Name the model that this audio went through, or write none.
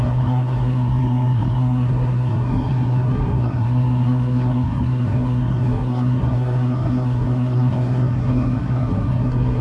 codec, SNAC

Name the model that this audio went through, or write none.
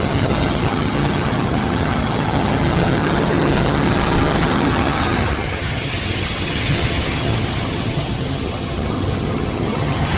vocoder, HiFi-GAN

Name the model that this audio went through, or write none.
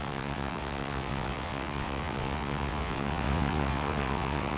vocoder, WaveNeXt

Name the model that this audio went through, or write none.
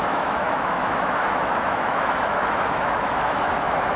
autoencoder, DAC-VAE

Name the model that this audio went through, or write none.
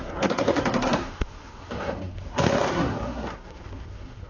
codec, SNAC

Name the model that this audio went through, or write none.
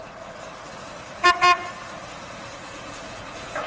vocoder, Vocos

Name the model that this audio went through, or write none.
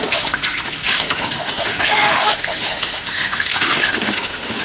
autoencoder, DAC-VAE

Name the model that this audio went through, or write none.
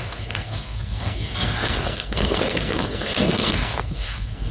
codec, SNAC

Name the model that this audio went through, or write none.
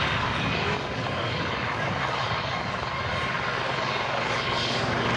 codec, DAC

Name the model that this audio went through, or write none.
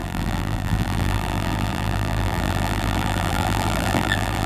vocoder, BigVGAN v2